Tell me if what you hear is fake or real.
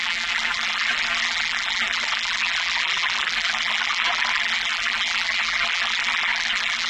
fake